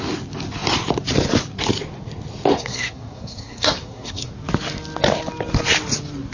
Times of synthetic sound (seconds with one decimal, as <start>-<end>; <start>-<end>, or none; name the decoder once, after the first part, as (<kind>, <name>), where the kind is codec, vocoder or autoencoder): 2.5-4.3 (codec, SNAC)